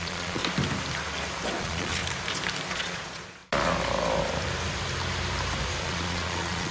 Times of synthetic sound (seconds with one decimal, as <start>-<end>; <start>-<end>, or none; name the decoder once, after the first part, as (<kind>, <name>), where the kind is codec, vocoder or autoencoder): 0.0-0.4 (vocoder, Vocos); 1.6-2.0; 2.7-3.4; 5.8-6.7